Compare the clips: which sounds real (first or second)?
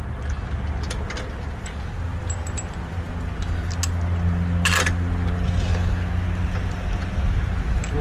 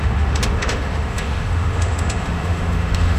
first